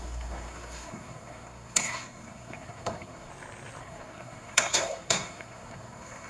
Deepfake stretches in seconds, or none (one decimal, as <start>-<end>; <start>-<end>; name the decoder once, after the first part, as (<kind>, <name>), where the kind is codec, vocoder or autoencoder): 0.0-3.3 (codec, SNAC); 3.8-6.3